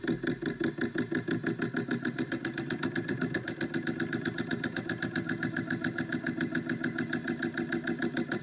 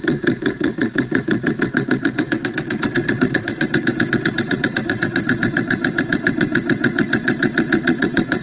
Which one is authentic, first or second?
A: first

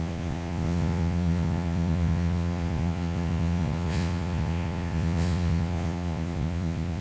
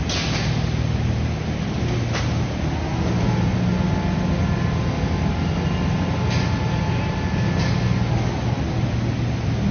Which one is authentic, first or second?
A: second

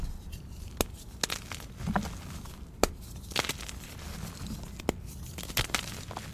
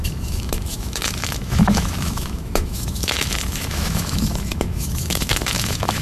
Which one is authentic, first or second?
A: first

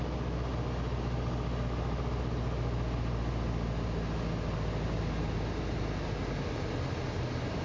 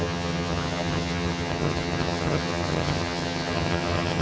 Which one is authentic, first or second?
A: first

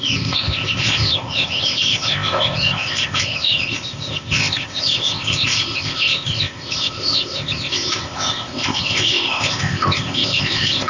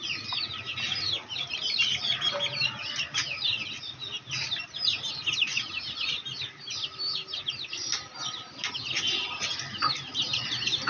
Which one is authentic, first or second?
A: second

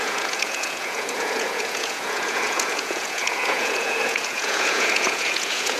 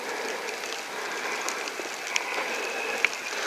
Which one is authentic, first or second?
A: second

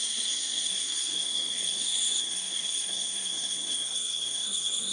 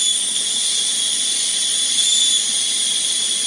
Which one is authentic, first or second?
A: second